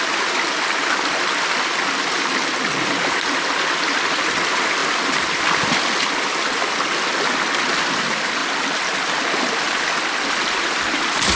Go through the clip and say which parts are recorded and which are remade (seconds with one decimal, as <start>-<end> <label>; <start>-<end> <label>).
0.0-11.4 recorded